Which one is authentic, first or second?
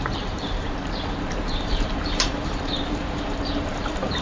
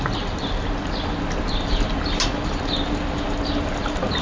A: second